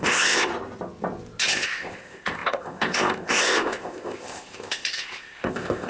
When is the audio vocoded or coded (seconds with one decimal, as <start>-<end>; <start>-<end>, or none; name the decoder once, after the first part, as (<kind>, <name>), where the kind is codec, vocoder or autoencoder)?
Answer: 0.0-0.5 (codec, ZipCodec); 1.4-5.9